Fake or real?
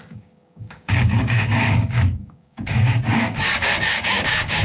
fake